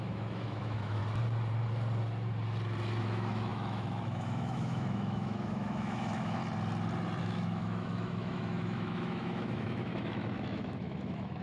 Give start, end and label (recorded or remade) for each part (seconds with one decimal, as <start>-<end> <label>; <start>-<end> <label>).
0.0-1.0 remade; 1.0-3.0 recorded; 3.0-6.4 remade; 6.4-7.2 recorded; 7.2-11.4 remade